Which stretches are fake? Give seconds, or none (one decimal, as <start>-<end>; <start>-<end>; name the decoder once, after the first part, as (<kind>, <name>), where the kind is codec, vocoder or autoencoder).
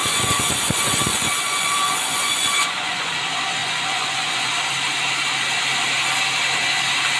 0.0-3.2 (vocoder, Vocos); 3.6-4.5